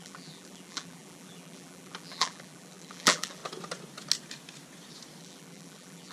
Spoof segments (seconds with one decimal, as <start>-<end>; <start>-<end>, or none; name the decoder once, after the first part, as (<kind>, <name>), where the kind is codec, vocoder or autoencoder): 0.0-3.4 (vocoder, BigVGAN v2); 5.2-6.1

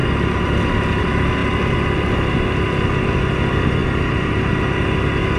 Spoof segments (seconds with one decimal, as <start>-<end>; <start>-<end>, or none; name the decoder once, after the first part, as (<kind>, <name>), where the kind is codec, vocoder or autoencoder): 3.8-4.5 (vocoder, BigVGAN v2)

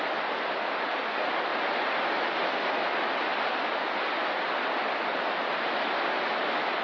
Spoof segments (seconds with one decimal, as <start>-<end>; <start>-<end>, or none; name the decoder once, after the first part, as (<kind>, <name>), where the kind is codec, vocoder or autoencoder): 1.5-2.5 (vocoder, BigVGAN v2)